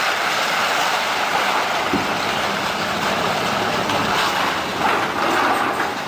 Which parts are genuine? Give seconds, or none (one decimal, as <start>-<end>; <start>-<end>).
4.7-5.6

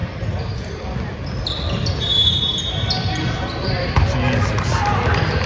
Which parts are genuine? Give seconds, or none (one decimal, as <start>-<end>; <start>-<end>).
0.0-5.5